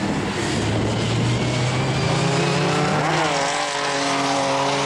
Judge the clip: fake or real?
real